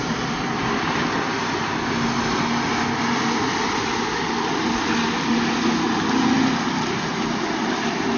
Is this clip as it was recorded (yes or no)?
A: yes